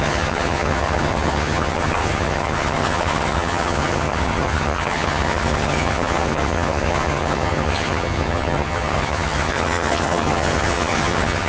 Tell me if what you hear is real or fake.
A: fake